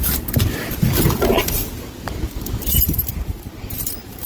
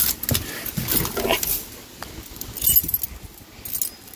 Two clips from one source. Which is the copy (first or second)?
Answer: first